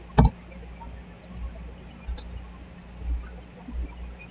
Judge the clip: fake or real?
real